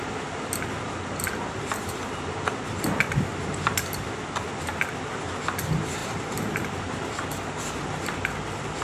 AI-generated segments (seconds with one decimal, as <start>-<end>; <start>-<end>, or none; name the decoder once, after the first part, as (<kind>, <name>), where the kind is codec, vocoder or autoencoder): 6.0-7.0 (vocoder, BigVGAN v2)